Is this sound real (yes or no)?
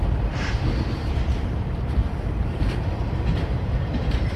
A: no